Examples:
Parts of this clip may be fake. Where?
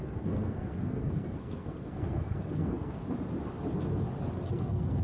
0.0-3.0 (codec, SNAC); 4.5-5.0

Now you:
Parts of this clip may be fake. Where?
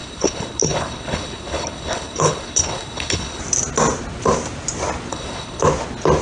0.0-3.4 (codec, HILCodec); 5.1-5.6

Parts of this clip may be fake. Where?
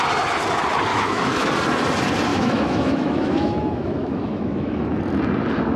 0.9-1.5 (autoencoder, DAC-VAE); 2.3-5.0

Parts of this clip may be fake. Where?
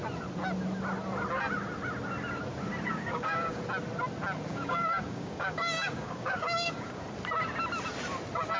2.9-3.6 (codec, DAC); 4.5-7.0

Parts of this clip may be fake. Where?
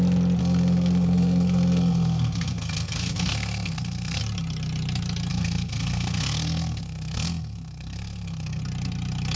0.4-4.2 (codec, SNAC); 5.3-8.6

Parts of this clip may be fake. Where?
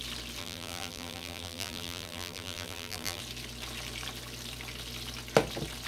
0.4-3.2 (vocoder, BigVGAN v2)